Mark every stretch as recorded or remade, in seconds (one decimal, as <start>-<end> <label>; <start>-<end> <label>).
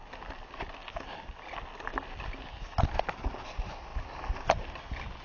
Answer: 0.0-5.2 recorded